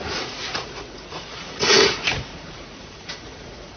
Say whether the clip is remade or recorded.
remade